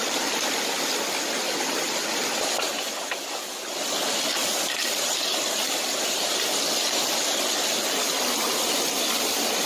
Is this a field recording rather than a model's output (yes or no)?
yes